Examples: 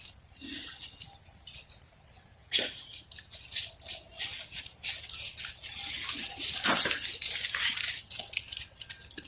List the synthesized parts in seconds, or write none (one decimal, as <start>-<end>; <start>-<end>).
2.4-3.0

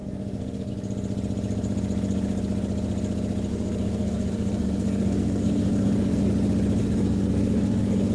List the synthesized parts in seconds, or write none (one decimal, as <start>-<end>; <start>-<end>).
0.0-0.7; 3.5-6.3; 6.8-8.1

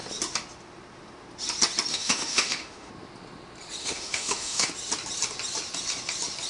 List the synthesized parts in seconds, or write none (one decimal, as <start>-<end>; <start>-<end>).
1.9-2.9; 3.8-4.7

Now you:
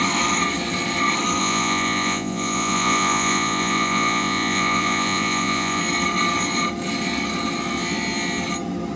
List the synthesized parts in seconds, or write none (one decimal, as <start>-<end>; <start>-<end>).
1.4-5.8

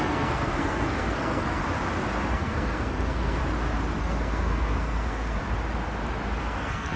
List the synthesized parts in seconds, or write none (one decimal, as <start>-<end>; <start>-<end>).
0.0-1.6; 2.3-3.4; 4.0-5.4; 6.4-7.0

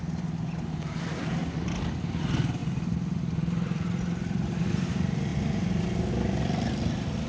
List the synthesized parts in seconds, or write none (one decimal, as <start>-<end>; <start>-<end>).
2.6-3.2